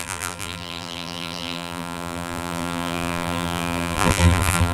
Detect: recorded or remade remade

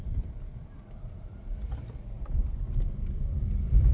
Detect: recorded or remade remade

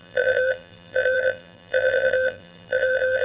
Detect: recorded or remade remade